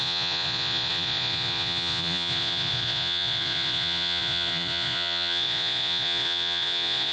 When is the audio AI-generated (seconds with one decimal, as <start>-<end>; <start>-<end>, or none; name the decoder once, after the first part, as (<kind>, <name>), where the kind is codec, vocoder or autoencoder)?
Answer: 0.0-7.1 (vocoder, Vocos)